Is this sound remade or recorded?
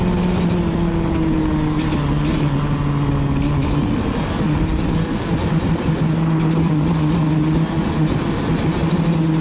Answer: recorded